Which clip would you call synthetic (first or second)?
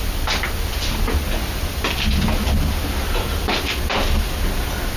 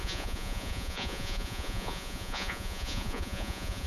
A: second